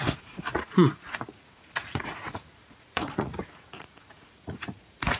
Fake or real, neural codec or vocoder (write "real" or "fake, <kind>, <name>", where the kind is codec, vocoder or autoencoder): fake, vocoder, Vocos